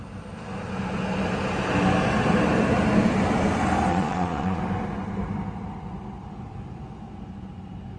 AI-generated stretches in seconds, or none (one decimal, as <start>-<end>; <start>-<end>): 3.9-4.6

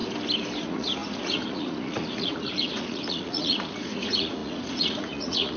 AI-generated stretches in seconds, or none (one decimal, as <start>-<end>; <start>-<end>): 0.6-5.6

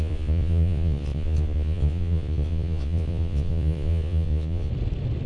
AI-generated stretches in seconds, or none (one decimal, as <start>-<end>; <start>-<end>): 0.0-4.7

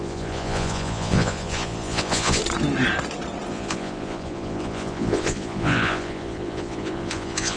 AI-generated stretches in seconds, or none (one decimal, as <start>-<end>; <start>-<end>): 0.0-2.4; 3.5-7.6